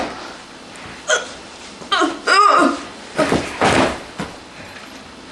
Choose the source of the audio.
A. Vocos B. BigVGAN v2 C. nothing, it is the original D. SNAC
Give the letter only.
B